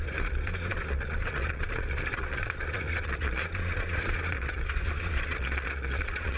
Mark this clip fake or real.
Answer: fake